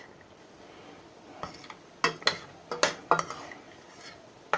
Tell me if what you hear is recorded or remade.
recorded